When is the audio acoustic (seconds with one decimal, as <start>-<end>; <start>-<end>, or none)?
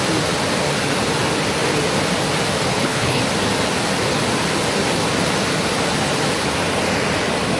0.0-2.7; 3.2-7.6